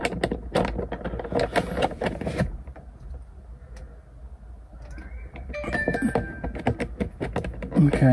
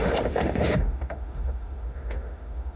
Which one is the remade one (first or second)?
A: second